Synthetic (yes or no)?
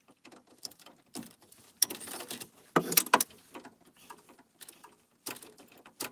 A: no